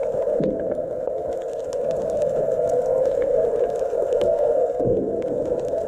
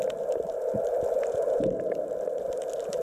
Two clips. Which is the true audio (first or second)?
second